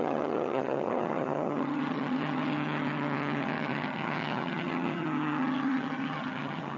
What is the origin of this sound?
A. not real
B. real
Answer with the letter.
A